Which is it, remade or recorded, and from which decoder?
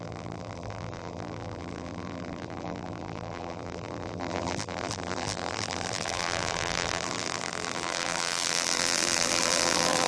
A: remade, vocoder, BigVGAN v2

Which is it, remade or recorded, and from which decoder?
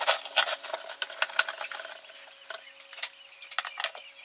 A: recorded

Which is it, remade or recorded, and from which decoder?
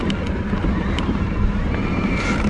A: remade, vocoder, BigVGAN v2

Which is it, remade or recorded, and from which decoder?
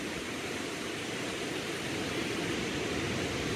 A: remade, vocoder, BigVGAN v2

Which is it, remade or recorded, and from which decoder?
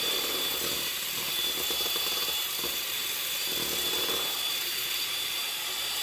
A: remade, vocoder, BigVGAN v2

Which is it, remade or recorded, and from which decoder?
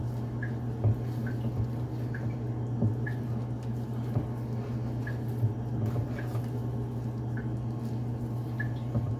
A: recorded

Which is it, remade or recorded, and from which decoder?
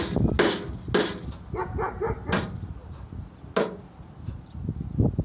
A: recorded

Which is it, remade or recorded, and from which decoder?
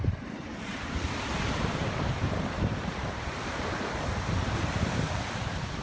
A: remade, vocoder, BigVGAN v2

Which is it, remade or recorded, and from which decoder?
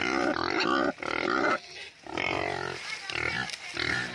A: recorded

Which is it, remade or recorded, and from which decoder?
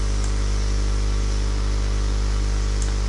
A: recorded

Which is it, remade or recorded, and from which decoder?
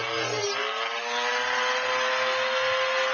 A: recorded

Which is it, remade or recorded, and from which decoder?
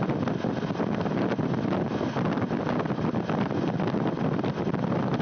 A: recorded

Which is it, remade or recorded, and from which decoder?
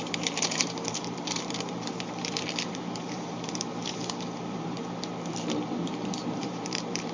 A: remade, vocoder, BigVGAN v2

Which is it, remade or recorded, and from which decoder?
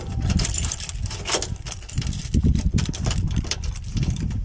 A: remade, vocoder, BigVGAN v2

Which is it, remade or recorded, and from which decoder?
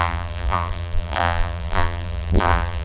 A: remade, vocoder, BigVGAN v2